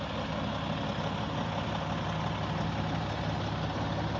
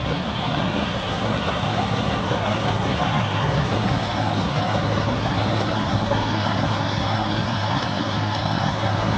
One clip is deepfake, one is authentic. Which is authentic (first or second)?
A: first